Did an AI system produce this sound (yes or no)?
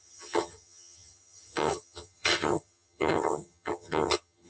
yes